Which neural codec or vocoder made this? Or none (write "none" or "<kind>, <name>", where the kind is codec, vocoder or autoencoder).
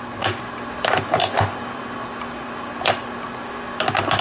none